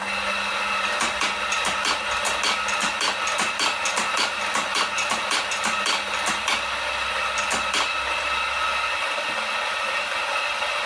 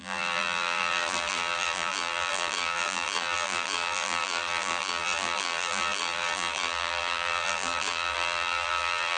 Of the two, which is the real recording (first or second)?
first